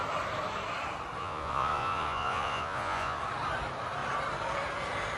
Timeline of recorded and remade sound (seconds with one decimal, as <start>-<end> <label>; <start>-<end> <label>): 0.0-1.2 recorded; 1.2-3.2 remade; 3.2-5.2 recorded